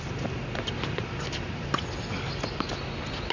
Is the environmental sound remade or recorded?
recorded